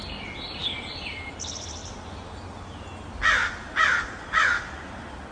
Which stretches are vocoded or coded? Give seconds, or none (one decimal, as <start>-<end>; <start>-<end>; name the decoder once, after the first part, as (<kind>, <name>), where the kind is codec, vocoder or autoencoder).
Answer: none